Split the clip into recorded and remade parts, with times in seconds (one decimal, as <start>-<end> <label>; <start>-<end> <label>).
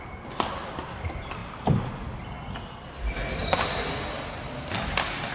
0.0-5.3 recorded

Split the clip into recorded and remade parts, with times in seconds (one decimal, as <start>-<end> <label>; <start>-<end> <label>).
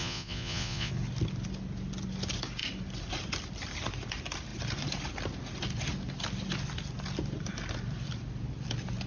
0.0-0.9 remade; 0.9-9.1 recorded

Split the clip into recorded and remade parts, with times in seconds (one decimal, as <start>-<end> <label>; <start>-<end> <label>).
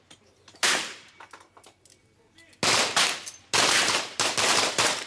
0.0-2.0 remade; 2.0-3.7 recorded; 3.7-5.1 remade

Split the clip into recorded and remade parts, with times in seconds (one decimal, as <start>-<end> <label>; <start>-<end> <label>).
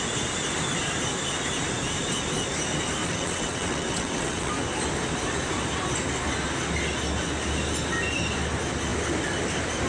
0.0-3.0 recorded; 3.0-4.5 remade; 4.5-9.9 recorded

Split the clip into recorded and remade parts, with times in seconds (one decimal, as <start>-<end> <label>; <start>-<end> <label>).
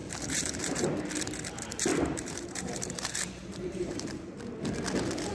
0.0-0.9 remade; 0.9-1.9 recorded; 1.9-4.3 remade; 4.3-5.3 recorded